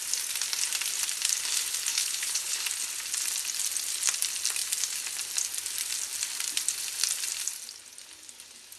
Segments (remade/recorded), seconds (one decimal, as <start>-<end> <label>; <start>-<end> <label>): 0.0-1.9 recorded; 1.9-2.6 remade; 2.6-8.8 recorded

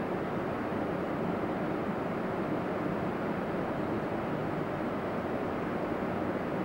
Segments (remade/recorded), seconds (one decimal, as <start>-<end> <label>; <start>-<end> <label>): 0.0-6.6 recorded

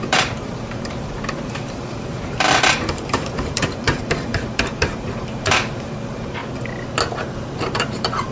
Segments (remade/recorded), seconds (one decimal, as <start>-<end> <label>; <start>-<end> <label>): 0.0-6.4 remade; 6.4-7.1 recorded; 7.1-8.3 remade

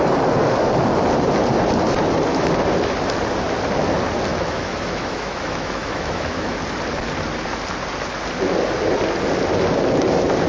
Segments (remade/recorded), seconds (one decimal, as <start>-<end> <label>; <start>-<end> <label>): 0.0-4.3 recorded; 4.3-6.6 remade; 6.6-10.5 recorded

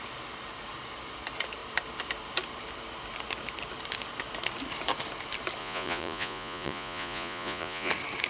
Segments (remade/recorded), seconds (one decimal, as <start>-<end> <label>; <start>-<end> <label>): 0.0-5.6 recorded; 5.6-7.9 remade; 7.9-8.3 recorded